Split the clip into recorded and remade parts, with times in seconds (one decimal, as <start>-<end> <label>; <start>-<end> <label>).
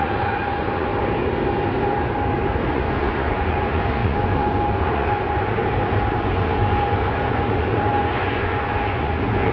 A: 0.0-0.9 remade; 0.9-2.7 recorded; 2.7-5.6 remade; 5.6-6.2 recorded; 6.2-9.5 remade